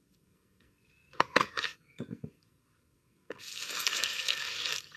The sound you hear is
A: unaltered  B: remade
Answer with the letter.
B